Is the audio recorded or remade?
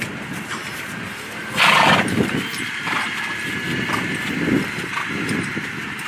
recorded